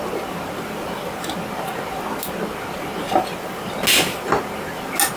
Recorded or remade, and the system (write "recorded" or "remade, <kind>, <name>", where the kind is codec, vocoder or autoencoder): recorded